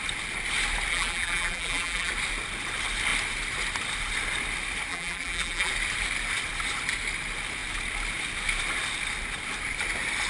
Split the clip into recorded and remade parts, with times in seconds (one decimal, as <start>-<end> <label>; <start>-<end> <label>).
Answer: 0.0-0.9 recorded; 0.9-2.1 remade; 2.1-4.9 recorded; 4.9-5.7 remade; 5.7-10.3 recorded